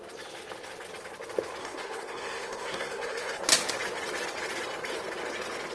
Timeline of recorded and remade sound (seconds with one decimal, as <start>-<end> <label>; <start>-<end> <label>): 0.0-1.6 recorded; 1.6-3.4 remade; 3.4-5.7 recorded

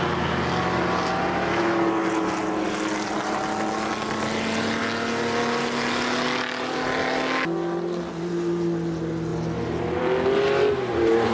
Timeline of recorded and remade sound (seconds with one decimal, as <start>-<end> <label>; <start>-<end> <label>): 0.0-11.3 recorded

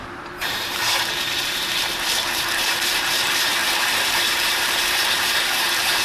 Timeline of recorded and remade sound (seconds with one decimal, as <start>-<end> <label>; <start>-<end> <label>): 0.0-6.0 remade

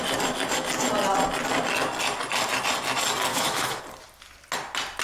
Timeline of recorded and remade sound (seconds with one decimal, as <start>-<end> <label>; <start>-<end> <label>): 0.0-3.3 recorded; 3.3-3.8 remade; 3.8-5.0 recorded

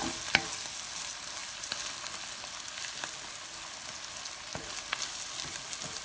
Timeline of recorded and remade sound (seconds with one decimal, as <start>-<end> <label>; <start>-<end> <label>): 0.0-6.0 recorded

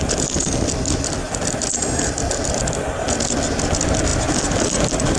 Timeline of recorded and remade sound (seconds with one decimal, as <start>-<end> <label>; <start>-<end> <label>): 0.0-5.2 recorded

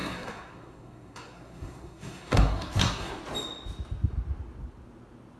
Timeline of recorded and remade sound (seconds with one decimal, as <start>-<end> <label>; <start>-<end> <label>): 0.0-3.2 remade; 3.2-5.4 recorded